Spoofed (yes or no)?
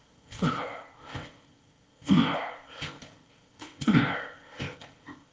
yes